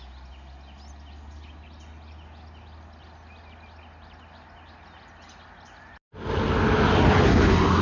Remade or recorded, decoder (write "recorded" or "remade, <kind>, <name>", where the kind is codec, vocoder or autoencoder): recorded